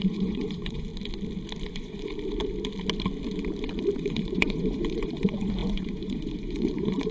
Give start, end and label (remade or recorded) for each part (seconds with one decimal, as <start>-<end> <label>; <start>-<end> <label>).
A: 0.0-0.9 remade; 0.9-1.7 recorded; 1.7-2.1 remade; 2.1-4.0 recorded; 4.0-7.1 remade